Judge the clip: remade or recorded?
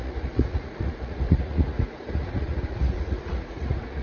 remade